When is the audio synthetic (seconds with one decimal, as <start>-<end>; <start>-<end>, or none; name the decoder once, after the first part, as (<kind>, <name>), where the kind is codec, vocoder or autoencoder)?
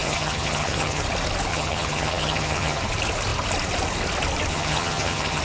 0.0-1.0 (vocoder, HiFi-GAN); 1.5-2.8; 4.5-5.4